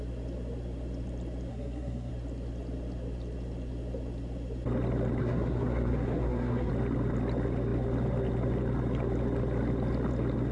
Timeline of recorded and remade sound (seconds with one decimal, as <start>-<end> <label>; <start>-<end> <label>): 0.0-1.5 recorded; 1.5-2.1 remade; 2.1-5.2 recorded; 5.2-6.7 remade; 6.7-10.5 recorded